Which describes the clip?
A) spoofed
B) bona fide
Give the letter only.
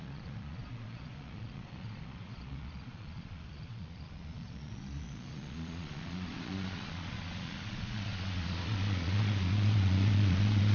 A